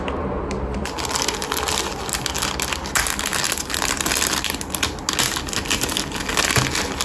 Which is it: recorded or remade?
recorded